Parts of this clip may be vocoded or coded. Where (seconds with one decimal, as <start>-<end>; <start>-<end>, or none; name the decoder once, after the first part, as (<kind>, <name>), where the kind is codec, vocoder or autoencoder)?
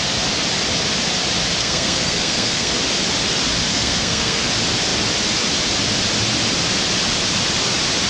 1.6-2.7 (codec, SNAC); 3.7-4.5